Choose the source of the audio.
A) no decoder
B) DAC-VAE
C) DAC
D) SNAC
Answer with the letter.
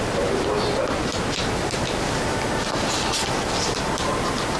A